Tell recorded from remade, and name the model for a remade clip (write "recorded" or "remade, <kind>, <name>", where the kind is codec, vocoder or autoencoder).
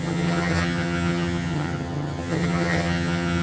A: remade, vocoder, HiFi-GAN